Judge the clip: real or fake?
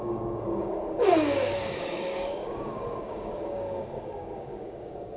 fake